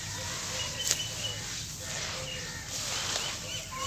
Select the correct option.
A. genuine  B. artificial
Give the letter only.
A